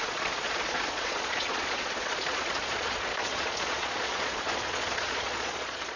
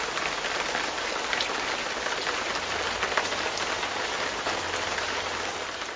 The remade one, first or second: first